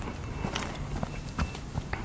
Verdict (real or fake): real